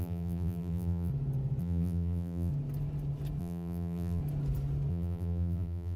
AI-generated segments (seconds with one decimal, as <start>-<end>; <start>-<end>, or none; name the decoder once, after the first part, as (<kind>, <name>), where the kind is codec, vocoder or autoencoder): 0.0-1.1 (vocoder, BigVGAN v2); 1.6-2.5; 3.4-4.2; 4.9-6.0